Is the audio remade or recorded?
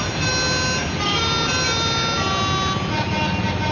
recorded